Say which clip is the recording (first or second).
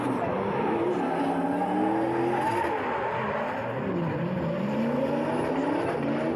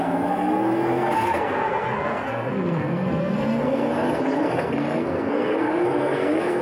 first